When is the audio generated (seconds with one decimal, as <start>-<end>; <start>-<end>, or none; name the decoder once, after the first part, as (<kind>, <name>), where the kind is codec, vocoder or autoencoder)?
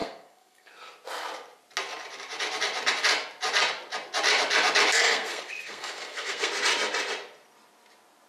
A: 0.0-0.7 (codec, SNAC); 4.9-6.5